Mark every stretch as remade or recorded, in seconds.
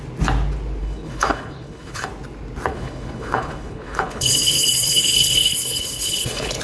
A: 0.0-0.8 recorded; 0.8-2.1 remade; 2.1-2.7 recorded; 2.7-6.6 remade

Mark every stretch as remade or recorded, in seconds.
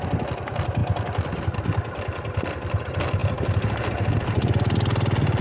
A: 0.0-5.4 recorded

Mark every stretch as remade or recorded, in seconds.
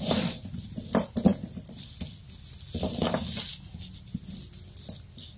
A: 0.0-5.4 recorded